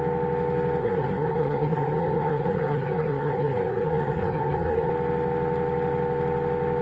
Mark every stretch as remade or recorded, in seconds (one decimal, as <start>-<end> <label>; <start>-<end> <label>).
0.0-0.8 recorded; 0.8-4.9 remade; 4.9-6.8 recorded